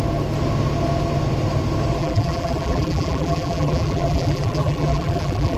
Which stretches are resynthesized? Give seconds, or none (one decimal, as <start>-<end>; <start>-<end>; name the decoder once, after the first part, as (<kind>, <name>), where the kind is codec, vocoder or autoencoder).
2.0-5.6 (vocoder, BigVGAN v2)